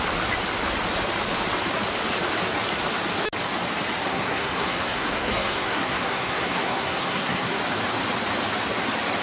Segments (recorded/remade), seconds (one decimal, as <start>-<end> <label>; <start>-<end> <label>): 0.0-4.1 recorded; 4.1-7.6 remade; 7.6-9.2 recorded